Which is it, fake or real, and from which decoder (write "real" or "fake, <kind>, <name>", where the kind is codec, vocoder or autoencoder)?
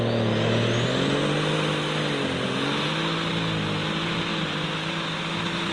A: real